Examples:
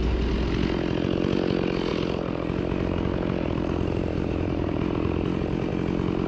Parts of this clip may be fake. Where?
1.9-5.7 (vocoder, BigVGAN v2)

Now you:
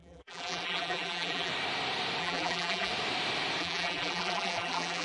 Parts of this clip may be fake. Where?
0.0-1.5 (vocoder, BigVGAN v2); 2.2-2.9; 3.6-5.0

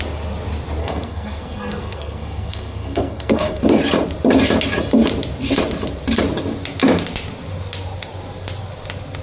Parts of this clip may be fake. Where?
0.8-3.6 (codec, SNAC)

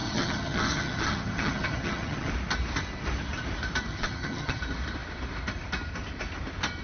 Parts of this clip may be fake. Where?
0.0-2.3 (vocoder, HiFi-GAN); 3.9-4.6

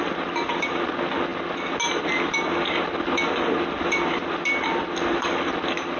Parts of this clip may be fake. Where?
none

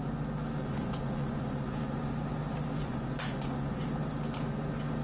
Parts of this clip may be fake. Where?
0.6-2.1 (vocoder, Vocos); 2.8-3.9

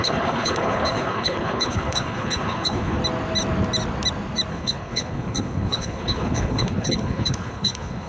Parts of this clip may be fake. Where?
0.0-3.0 (codec, HILCodec); 4.5-8.1

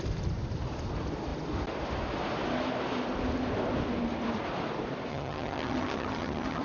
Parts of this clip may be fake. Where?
5.1-6.6 (vocoder, HiFi-GAN)